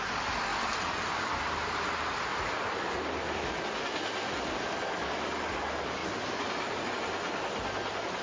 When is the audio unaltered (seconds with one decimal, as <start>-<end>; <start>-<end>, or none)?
0.0-2.3; 4.6-8.2